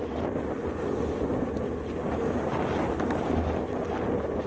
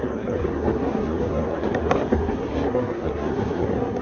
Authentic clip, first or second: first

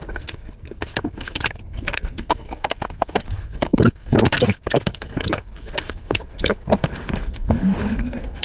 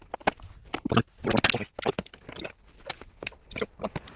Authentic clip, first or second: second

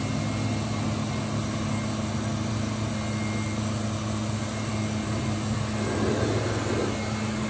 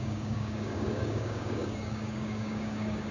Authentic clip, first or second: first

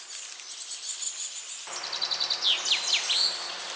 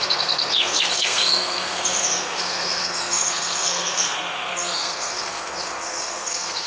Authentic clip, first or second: first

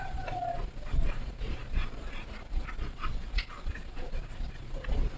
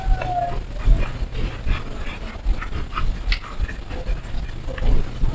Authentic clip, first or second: second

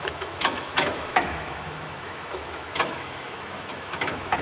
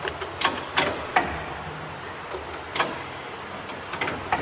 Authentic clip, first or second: second